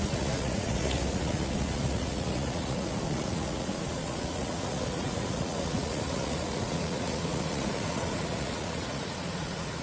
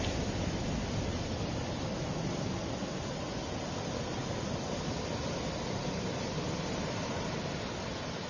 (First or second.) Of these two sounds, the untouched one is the second